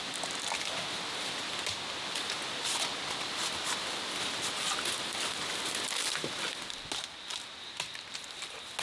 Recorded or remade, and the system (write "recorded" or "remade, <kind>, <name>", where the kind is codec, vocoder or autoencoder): recorded